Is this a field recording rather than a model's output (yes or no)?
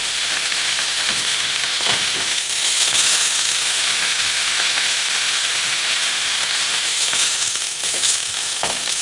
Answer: no